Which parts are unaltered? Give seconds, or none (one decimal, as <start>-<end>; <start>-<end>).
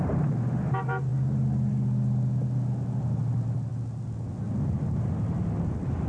0.0-6.1